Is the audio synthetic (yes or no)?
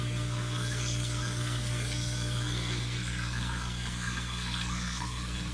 yes